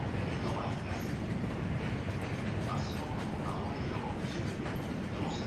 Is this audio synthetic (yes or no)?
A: no